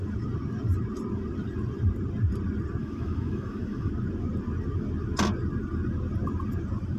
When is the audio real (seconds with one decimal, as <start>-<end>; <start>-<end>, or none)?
0.0-2.8; 3.9-7.0